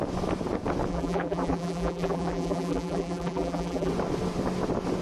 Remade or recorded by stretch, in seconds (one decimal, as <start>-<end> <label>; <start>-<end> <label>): 0.0-0.9 recorded; 0.9-3.9 remade; 3.9-5.0 recorded